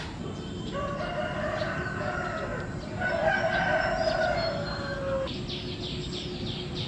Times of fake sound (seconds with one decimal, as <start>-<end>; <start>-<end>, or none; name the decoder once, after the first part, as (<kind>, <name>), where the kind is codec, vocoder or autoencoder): none